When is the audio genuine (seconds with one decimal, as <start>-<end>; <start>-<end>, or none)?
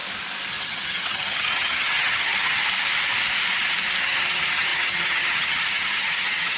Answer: 0.0-0.5; 2.6-4.0